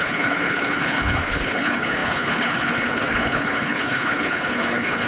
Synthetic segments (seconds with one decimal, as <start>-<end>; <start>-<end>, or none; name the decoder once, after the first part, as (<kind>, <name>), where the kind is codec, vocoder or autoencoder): 0.0-5.1 (codec, HILCodec)